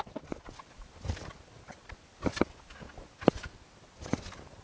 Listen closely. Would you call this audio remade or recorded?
recorded